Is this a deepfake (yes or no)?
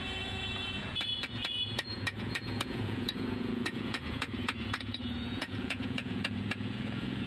yes